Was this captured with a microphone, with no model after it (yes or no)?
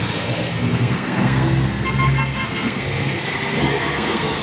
no